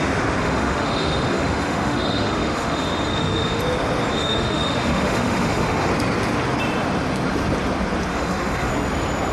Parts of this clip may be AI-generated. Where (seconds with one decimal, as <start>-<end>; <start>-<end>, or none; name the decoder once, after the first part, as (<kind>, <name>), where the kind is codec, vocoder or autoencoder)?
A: 0.4-3.6 (autoencoder, DAC-VAE); 4.1-5.9; 8.1-8.7